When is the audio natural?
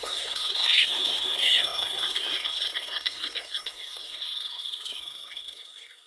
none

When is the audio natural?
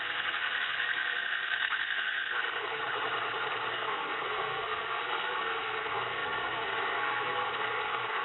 2.8-3.7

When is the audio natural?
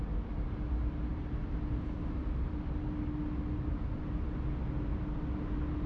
0.0-5.9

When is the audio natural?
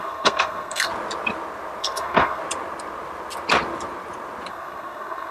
0.9-1.8; 2.4-4.5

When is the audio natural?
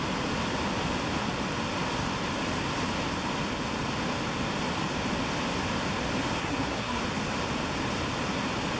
0.0-6.4; 7.0-8.8